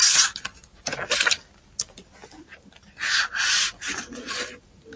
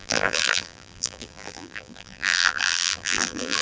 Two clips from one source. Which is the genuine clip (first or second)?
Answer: first